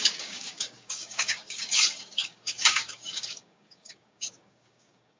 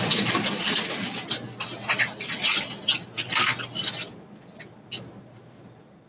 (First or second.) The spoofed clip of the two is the first